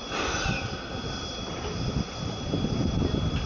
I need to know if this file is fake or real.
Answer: real